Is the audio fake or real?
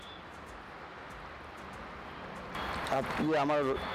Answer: real